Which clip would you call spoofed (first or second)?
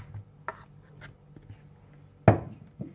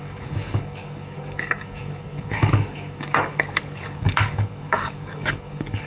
second